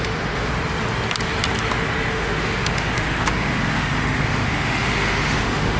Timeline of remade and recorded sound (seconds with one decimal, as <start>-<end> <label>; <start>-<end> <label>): 0.0-0.5 remade; 0.5-2.1 recorded; 2.1-5.8 remade